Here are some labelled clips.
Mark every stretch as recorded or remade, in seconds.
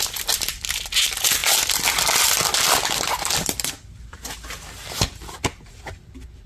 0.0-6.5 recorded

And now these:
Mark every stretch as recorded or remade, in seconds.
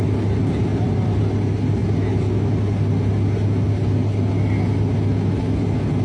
0.0-0.7 recorded; 0.7-1.2 remade; 1.2-6.0 recorded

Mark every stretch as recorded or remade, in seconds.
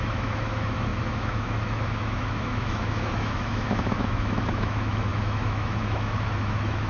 0.0-6.9 remade